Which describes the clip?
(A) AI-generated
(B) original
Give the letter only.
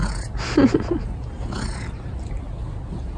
B